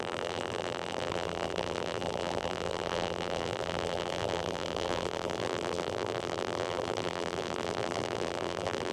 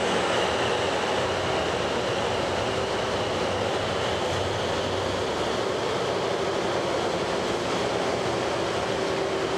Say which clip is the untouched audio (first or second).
second